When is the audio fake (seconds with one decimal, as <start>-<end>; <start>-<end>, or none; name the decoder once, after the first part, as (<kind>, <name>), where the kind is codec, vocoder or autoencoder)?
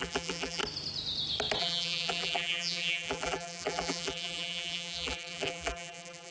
0.0-0.6 (vocoder, BigVGAN v2); 1.6-6.3